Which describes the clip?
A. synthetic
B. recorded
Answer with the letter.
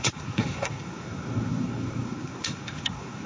A